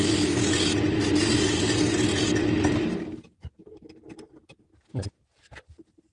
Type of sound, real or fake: real